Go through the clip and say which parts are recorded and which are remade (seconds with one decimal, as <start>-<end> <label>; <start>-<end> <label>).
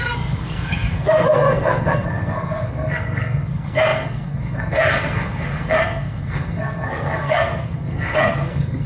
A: 0.0-8.9 remade